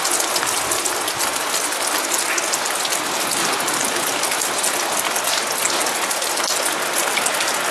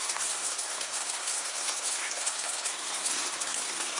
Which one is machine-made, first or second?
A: second